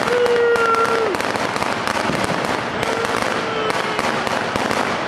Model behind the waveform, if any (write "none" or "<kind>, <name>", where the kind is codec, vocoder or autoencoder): none